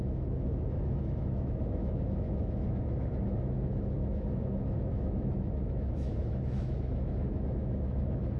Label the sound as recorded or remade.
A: remade